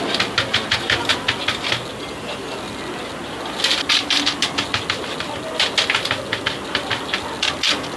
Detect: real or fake real